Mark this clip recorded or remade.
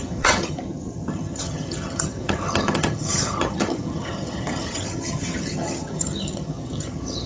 remade